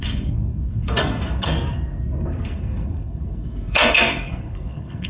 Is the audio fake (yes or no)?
yes